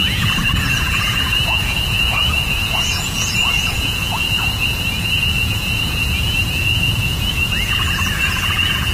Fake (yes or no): yes